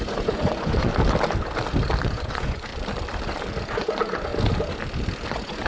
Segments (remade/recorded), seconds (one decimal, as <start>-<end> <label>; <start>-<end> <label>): 0.0-0.9 remade; 0.9-2.0 recorded; 2.0-2.7 remade; 2.7-3.7 recorded; 3.7-4.3 remade; 4.3-5.3 recorded; 5.3-5.7 remade